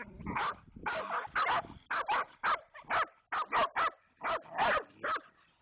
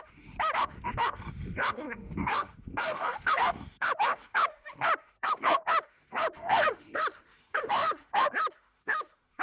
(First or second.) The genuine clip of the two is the first